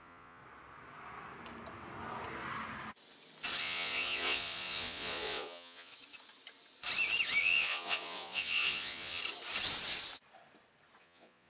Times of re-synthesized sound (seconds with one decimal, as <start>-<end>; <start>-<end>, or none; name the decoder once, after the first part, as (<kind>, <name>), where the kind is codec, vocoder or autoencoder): 0.0-0.4 (vocoder, Vocos); 3.6-5.9; 7.4-9.2; 11.0-11.5